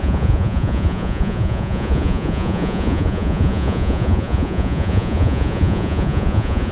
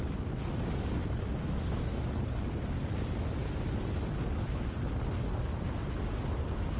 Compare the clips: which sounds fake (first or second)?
first